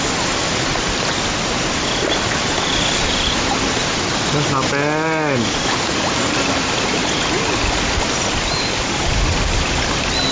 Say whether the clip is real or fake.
real